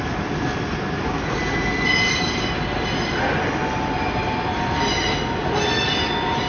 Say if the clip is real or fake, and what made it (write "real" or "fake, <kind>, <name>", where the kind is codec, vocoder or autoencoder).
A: real